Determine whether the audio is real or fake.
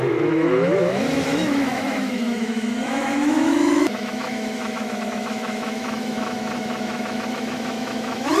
fake